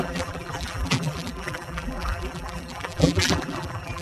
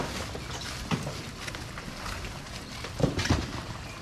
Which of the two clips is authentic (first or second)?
second